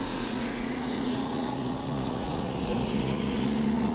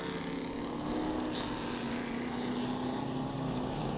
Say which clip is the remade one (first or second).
first